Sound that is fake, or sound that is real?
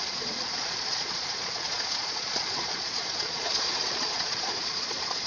fake